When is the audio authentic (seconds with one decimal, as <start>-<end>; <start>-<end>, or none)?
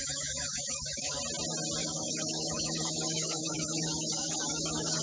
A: 1.2-1.8